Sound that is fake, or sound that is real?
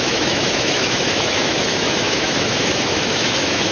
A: fake